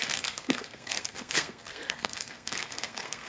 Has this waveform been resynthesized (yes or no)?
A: yes